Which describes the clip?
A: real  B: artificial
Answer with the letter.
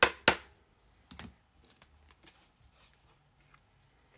A